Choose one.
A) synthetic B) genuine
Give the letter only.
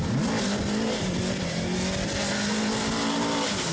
B